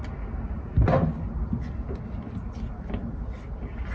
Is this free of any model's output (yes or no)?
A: yes